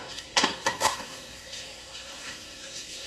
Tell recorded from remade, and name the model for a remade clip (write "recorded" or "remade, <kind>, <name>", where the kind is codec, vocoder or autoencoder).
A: remade, codec, SNAC